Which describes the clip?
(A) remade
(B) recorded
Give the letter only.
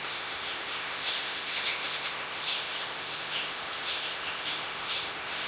A